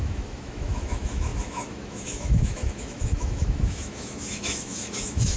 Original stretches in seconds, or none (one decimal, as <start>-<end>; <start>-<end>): none